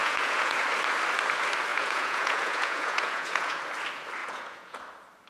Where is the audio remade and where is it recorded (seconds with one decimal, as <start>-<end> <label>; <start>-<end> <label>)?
0.0-0.6 remade; 0.6-1.7 recorded; 1.7-3.6 remade; 3.6-4.2 recorded; 4.2-4.8 remade; 4.8-5.3 recorded